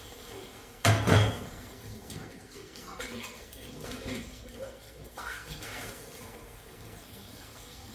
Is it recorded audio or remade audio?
remade